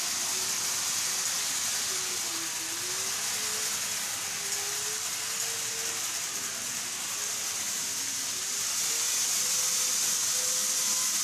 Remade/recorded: recorded